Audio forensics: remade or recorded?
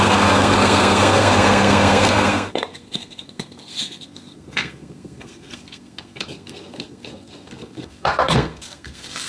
remade